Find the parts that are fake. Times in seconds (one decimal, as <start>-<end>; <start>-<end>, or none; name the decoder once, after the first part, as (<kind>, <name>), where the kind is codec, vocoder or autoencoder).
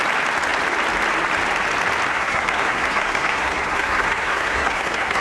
2.1-5.2 (codec, SNAC)